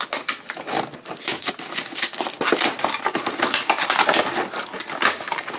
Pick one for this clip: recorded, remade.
recorded